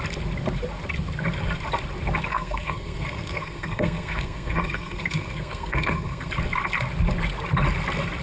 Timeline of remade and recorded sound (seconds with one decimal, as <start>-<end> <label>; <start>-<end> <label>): 0.0-2.3 recorded; 2.3-6.3 remade; 6.3-8.2 recorded